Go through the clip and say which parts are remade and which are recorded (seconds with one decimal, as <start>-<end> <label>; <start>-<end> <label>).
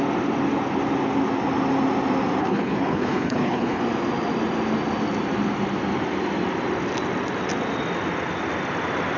0.0-2.4 recorded; 2.4-3.8 remade; 3.8-9.2 recorded